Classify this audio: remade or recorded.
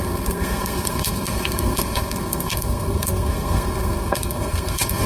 remade